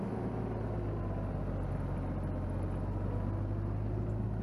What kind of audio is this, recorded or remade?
recorded